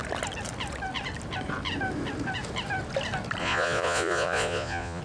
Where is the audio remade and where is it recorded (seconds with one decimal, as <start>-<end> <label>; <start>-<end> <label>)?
0.0-3.4 recorded; 3.4-5.0 remade